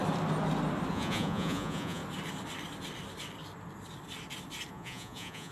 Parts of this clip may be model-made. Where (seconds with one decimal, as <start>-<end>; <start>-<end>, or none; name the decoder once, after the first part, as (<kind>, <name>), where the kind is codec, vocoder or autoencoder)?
0.9-2.0 (vocoder, Vocos); 4.7-5.5